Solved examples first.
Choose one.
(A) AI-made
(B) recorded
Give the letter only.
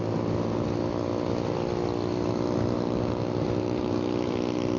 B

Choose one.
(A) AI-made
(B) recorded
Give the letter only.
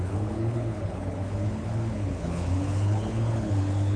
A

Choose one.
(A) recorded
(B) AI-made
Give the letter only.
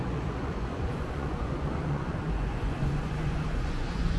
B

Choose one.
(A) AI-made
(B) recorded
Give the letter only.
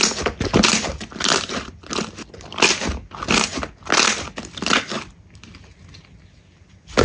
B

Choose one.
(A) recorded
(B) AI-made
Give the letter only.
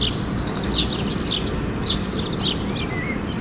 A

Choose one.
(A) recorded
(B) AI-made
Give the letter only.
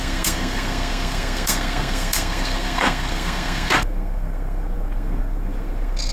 B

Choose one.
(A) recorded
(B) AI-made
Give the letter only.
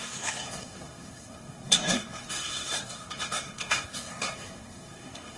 B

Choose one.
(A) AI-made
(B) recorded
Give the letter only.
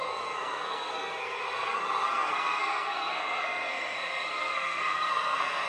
A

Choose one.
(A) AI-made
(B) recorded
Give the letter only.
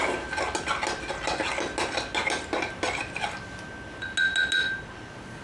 B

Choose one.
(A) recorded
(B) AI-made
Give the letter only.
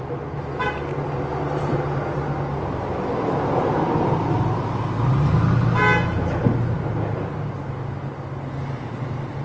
A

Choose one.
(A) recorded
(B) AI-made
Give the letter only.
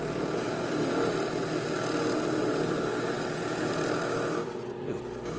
A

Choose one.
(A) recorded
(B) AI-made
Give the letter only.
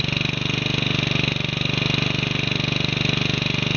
A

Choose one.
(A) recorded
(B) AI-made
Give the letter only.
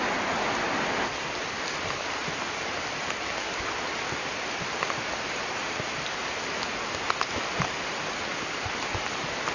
A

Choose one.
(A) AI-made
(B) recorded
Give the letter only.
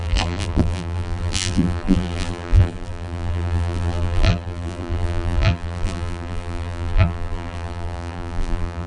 A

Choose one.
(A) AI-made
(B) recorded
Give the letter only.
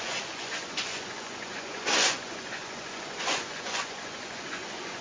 A